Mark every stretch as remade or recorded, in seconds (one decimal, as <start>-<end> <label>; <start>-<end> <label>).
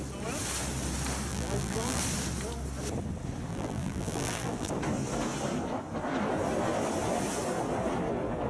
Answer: 0.0-1.3 recorded; 1.3-2.0 remade; 2.0-3.5 recorded; 3.5-4.7 remade; 4.7-8.5 recorded